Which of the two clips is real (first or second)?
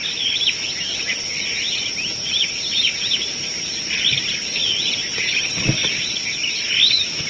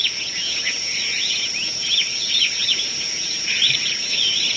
first